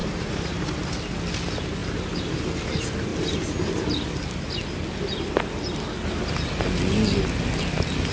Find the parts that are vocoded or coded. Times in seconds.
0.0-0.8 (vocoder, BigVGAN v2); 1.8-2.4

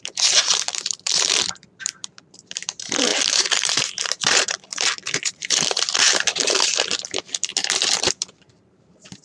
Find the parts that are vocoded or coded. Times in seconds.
0.0-7.5 (vocoder, BigVGAN v2); 8.0-9.2